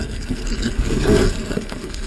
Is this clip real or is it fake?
fake